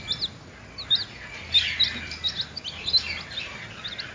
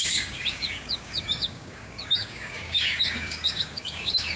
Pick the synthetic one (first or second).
second